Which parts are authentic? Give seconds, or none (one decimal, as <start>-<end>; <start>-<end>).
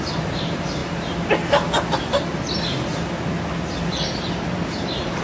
0.8-3.9